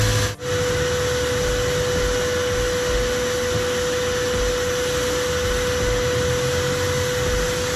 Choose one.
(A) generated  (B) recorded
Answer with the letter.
B